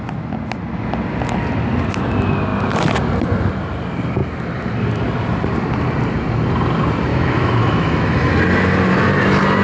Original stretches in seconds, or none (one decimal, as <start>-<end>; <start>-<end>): 0.0-7.1; 8.3-9.6